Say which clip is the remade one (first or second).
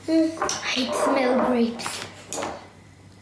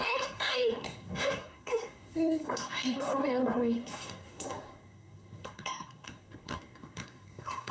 second